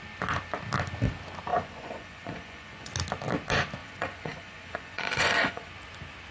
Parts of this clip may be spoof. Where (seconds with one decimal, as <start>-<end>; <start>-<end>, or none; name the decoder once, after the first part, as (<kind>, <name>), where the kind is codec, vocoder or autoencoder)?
1.5-2.9 (vocoder, Vocos); 3.8-5.7

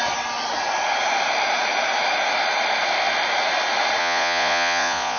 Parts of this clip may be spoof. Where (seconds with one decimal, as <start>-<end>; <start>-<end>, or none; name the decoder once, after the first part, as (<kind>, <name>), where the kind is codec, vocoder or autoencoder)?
4.0-5.2 (vocoder, Vocos)

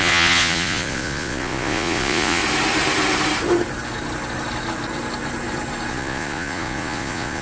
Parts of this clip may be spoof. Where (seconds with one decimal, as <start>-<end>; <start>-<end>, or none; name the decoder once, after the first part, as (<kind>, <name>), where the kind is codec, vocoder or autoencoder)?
0.0-2.4 (vocoder, Vocos); 5.9-7.4

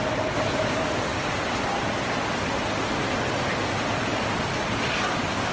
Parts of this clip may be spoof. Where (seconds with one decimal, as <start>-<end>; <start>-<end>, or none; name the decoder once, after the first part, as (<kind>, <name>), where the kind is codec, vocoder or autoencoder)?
none

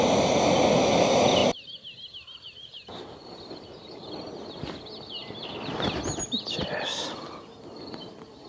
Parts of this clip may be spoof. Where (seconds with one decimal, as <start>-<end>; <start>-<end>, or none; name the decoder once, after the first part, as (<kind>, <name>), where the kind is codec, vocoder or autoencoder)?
none

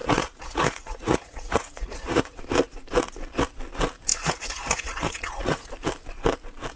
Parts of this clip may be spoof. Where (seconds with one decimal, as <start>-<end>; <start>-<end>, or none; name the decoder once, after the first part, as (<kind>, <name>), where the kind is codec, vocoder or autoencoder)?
0.0-2.4 (vocoder, Vocos); 4.1-5.7

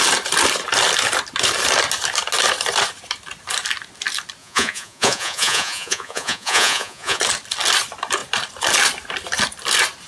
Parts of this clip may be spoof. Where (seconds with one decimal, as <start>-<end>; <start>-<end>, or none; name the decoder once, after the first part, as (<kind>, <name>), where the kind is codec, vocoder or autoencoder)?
4.4-7.2 (vocoder, Vocos)